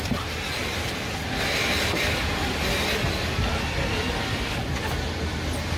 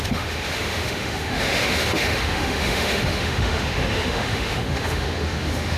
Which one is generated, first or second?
second